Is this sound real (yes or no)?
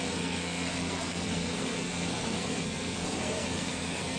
no